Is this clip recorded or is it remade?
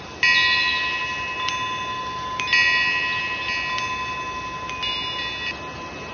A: recorded